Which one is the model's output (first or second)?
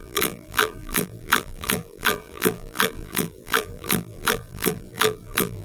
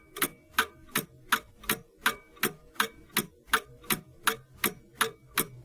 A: first